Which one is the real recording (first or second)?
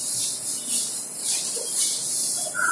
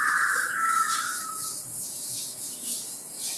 first